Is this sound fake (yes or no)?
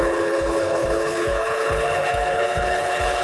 yes